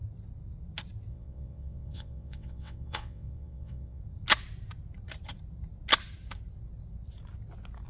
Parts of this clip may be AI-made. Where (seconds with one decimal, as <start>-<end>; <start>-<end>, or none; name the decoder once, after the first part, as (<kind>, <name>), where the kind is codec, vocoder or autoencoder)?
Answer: 1.1-4.0 (vocoder, WaveNeXt)